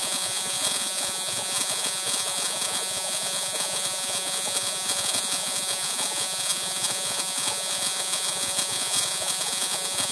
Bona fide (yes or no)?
no